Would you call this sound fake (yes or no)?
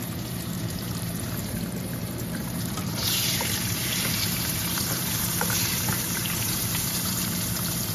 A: yes